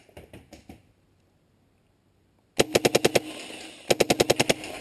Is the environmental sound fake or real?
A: real